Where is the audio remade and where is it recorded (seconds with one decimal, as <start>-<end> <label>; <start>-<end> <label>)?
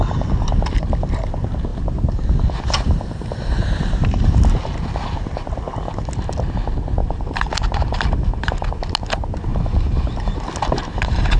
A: 0.0-7.0 recorded; 7.0-8.5 remade; 8.5-9.5 recorded; 9.5-10.5 remade; 10.5-11.4 recorded